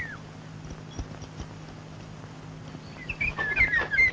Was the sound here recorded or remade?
recorded